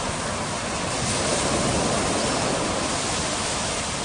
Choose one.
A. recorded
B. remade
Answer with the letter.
A